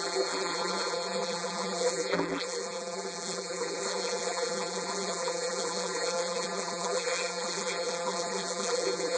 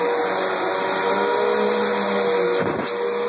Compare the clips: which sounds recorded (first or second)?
second